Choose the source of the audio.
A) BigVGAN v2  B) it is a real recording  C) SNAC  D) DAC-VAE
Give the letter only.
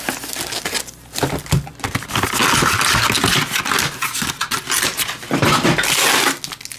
B